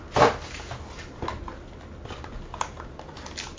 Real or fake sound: real